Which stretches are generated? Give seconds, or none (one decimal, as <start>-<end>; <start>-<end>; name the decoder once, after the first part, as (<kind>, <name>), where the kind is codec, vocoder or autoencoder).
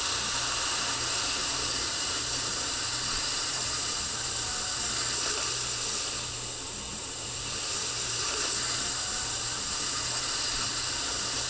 1.4-4.8 (vocoder, BigVGAN v2); 6.9-11.5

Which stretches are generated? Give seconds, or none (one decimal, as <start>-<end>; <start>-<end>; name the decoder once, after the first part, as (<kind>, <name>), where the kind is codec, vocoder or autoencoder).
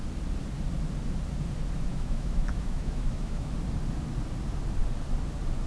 1.9-3.5 (autoencoder, DAC-VAE)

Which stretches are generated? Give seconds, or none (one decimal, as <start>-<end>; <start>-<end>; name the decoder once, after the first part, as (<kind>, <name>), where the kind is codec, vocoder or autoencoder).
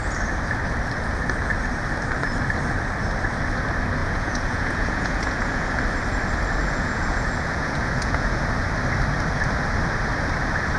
4.0-5.7 (vocoder, Vocos); 6.6-8.4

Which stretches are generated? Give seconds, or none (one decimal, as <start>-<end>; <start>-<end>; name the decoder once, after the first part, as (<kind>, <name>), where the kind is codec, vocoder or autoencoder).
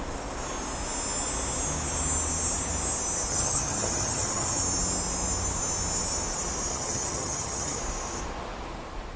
3.3-4.6 (vocoder, HiFi-GAN); 6.7-7.8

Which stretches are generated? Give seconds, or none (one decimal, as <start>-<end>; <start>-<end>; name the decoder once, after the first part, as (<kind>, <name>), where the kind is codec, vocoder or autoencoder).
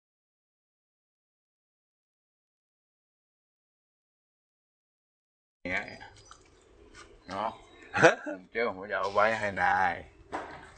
6.9-10.4 (vocoder, Vocos)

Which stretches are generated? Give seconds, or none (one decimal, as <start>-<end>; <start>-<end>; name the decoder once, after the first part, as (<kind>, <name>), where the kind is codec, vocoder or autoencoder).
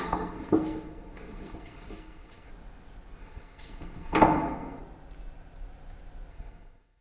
0.0-2.5 (codec, SNAC); 3.2-4.8; 6.3-7.0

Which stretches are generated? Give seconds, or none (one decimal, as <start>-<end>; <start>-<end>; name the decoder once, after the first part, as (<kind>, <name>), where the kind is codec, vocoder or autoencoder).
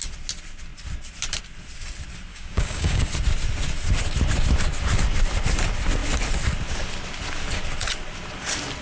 2.3-3.1 (codec, DAC)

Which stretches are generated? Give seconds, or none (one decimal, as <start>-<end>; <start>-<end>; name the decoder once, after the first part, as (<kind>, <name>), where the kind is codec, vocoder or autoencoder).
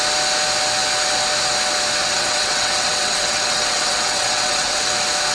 2.0-4.8 (vocoder, WaveNeXt)